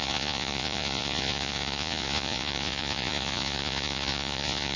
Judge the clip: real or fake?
fake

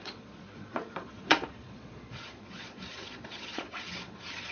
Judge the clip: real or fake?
fake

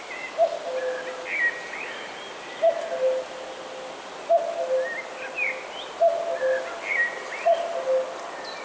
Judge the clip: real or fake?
real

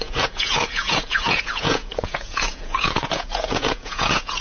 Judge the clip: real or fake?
fake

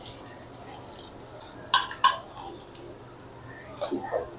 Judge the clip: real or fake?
real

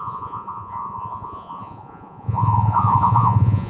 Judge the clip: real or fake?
fake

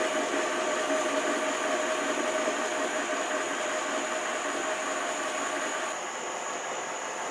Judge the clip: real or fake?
real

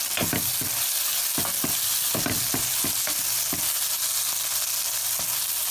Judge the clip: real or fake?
real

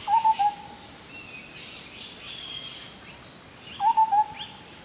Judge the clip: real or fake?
real